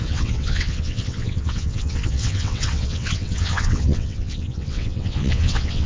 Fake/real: fake